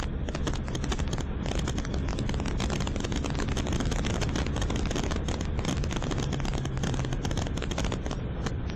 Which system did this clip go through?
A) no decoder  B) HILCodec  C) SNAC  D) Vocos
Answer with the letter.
A